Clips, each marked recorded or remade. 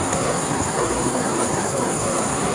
remade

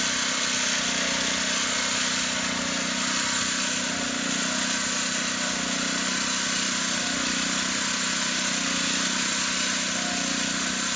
recorded